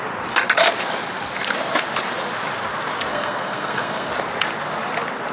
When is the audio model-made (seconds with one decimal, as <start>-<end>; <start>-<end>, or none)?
3.1-4.1